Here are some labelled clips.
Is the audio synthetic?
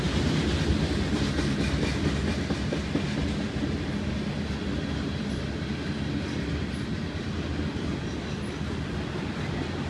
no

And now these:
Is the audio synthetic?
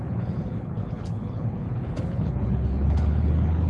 yes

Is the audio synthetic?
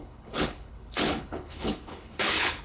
yes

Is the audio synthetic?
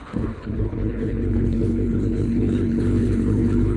yes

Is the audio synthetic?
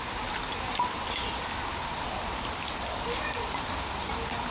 no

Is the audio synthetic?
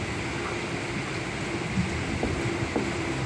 no